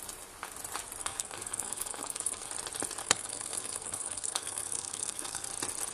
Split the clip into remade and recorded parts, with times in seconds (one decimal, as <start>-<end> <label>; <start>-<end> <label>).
0.0-1.0 recorded; 1.0-2.5 remade; 2.5-3.0 recorded; 3.0-5.5 remade; 5.5-5.9 recorded